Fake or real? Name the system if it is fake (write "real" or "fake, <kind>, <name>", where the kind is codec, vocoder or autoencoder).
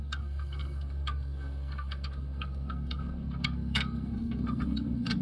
fake, codec, SNAC